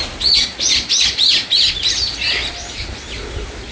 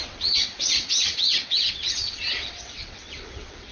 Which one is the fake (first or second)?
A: second